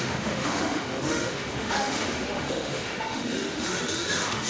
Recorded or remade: remade